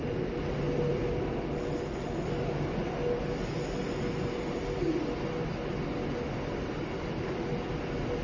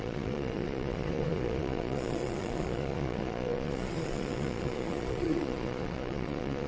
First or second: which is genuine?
first